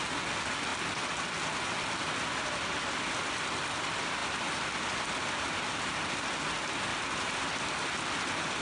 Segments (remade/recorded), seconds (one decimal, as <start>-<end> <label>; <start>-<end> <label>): 0.0-8.6 recorded